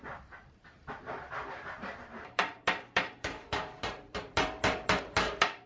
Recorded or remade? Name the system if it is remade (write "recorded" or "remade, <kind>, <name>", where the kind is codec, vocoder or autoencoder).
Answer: remade, vocoder, BigVGAN v2